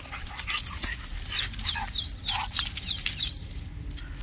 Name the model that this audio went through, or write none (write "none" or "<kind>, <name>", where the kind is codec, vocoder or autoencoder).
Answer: none